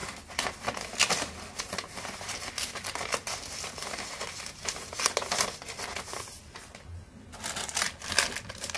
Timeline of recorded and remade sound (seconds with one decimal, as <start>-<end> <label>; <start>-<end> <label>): 0.0-8.8 recorded